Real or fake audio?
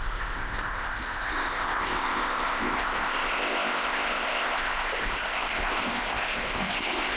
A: fake